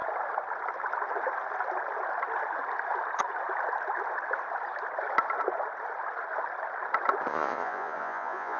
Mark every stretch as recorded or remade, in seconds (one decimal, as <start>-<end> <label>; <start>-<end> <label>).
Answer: 0.0-7.3 recorded; 7.3-8.6 remade